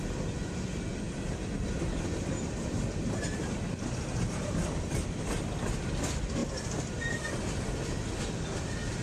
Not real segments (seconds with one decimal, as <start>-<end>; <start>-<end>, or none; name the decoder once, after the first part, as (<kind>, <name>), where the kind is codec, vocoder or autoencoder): 0.9-5.6 (vocoder, BigVGAN v2); 6.4-6.9